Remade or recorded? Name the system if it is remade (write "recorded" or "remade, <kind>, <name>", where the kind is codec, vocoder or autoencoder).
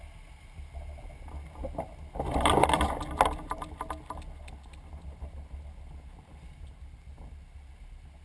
recorded